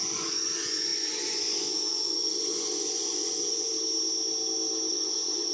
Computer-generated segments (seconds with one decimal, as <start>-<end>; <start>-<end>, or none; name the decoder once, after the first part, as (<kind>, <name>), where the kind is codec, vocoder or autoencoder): 0.0-3.7 (vocoder, Vocos); 4.9-5.5

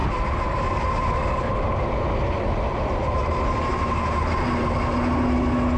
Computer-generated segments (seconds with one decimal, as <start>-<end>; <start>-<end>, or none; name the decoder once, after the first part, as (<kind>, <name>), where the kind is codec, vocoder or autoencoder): none

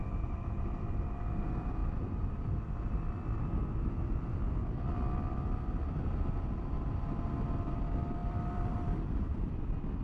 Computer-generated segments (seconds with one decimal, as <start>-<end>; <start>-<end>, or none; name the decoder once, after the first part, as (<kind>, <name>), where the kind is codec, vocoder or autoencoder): 0.0-1.8 (vocoder, BigVGAN v2); 6.0-10.0

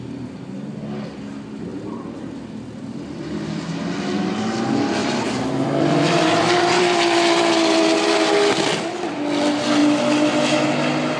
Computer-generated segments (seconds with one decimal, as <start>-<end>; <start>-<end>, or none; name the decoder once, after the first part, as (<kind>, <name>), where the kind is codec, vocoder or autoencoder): 1.7-3.0 (vocoder, BigVGAN v2); 5.0-7.5